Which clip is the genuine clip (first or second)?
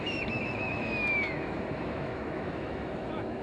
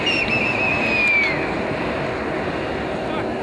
second